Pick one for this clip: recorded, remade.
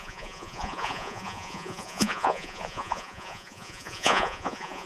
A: remade